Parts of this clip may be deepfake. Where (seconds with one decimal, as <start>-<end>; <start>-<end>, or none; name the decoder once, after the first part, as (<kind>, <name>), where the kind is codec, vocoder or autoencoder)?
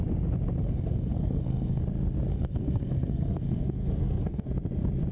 0.6-1.8 (codec, SNAC); 2.3-4.5